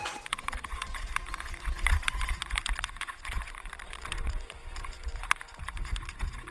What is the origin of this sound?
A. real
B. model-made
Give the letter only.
B